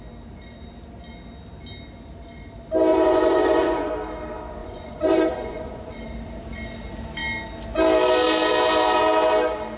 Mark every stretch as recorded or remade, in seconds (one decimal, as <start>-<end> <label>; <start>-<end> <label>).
0.0-2.9 recorded; 2.9-3.9 remade; 3.9-4.6 recorded; 4.6-5.9 remade; 5.9-9.8 recorded